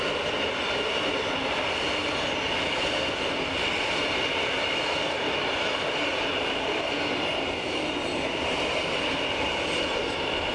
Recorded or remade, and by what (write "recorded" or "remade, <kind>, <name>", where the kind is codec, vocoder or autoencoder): recorded